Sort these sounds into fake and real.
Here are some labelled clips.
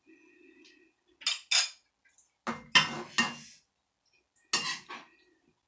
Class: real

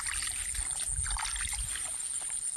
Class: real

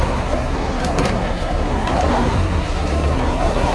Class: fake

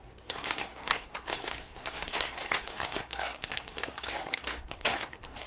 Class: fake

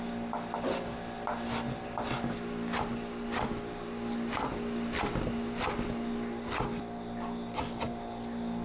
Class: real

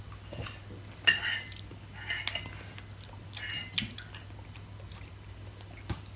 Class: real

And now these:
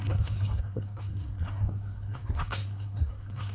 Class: fake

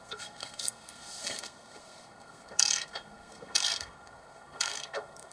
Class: fake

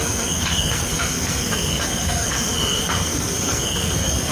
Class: fake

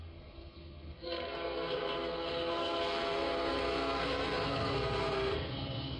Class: fake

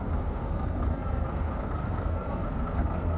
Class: fake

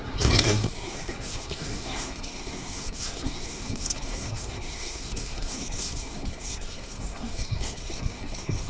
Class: fake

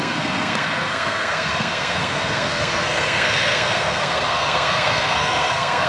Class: fake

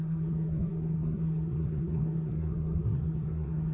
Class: fake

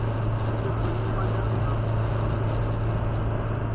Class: real